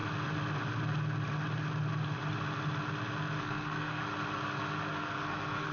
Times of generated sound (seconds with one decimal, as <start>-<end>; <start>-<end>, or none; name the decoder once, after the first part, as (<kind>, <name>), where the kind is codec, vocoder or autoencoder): 3.4-4.0 (codec, SNAC); 4.9-5.7